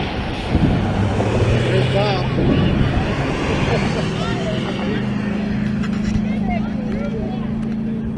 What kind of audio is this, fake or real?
real